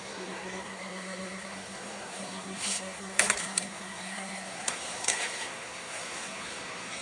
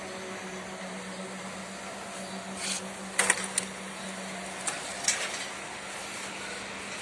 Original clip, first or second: second